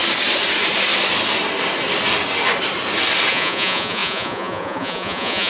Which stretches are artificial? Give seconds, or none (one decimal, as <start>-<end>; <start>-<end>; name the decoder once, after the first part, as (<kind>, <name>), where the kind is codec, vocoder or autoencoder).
3.3-5.5 (vocoder, Vocos)